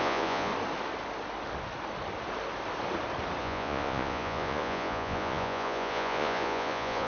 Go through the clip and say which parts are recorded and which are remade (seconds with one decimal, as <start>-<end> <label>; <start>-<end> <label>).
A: 0.0-0.5 remade; 0.5-3.4 recorded; 3.4-7.1 remade